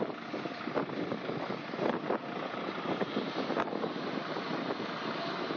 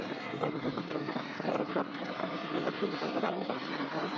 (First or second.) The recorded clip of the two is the first